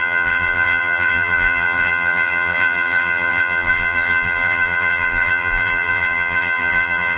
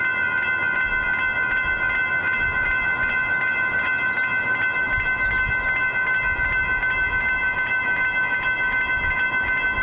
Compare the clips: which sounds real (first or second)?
second